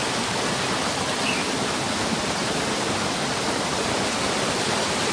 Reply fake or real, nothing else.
real